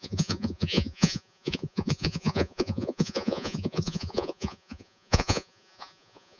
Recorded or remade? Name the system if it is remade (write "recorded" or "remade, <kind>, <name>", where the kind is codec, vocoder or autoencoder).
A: remade, vocoder, Vocos